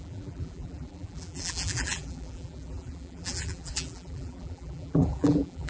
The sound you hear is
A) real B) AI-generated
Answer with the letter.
B